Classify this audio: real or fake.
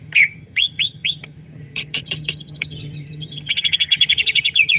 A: fake